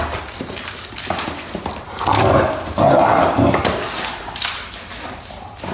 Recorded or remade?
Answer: recorded